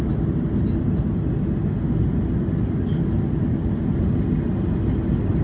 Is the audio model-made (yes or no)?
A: no